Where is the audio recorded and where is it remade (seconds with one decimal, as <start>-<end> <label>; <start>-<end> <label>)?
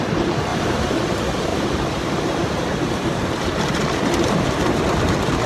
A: 0.0-0.5 recorded; 0.5-1.0 remade; 1.0-1.5 recorded; 1.5-4.8 remade; 4.8-5.5 recorded